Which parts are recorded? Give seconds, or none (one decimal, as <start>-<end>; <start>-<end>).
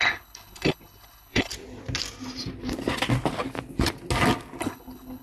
1.5-4.6